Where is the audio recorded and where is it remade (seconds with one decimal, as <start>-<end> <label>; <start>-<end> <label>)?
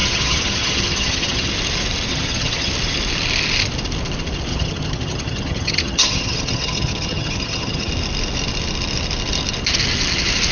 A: 0.0-1.5 remade; 1.5-2.1 recorded; 2.1-2.7 remade; 2.7-4.5 recorded; 4.5-7.9 remade; 7.9-10.5 recorded